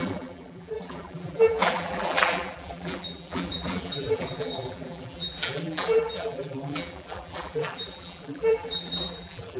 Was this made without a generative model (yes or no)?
no